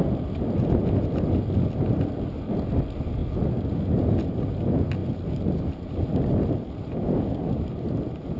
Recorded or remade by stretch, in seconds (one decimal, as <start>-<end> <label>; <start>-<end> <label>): 0.0-8.4 recorded